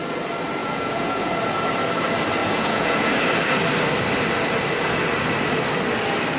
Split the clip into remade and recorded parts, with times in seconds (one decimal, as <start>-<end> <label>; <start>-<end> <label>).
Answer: 0.0-0.6 recorded; 0.6-1.3 remade; 1.3-2.4 recorded; 2.4-3.1 remade; 3.1-6.4 recorded